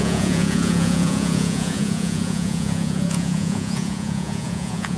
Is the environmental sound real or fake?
fake